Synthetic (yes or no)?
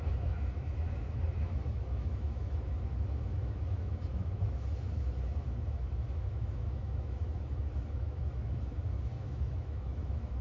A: yes